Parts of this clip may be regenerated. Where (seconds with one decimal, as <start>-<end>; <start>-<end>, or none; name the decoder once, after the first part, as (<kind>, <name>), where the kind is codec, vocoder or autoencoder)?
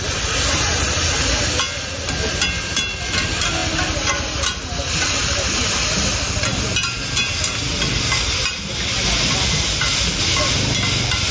none